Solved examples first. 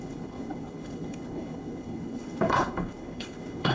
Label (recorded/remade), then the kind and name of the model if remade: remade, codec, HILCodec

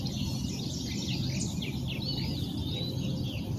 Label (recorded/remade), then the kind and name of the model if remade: recorded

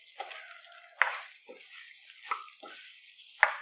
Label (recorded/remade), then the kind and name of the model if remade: recorded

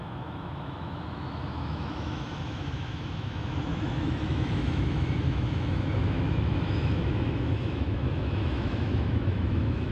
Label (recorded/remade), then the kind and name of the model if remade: remade, autoencoder, DAC-VAE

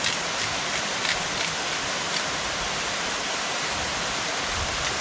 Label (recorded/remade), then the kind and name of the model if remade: recorded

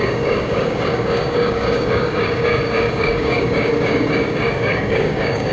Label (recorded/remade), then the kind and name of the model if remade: remade, codec, DAC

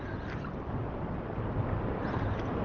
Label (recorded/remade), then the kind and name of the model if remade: remade, vocoder, BigVGAN v2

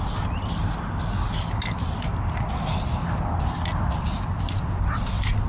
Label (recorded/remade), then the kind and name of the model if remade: recorded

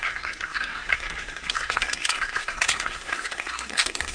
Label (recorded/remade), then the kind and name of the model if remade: remade, codec, SNAC